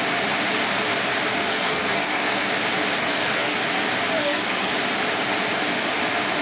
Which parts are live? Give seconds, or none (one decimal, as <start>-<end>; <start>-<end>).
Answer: 0.0-1.5; 2.5-3.0; 3.5-4.2; 4.7-6.4